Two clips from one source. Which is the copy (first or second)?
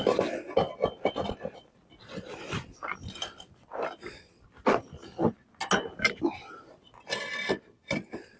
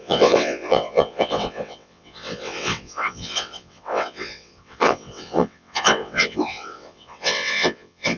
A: second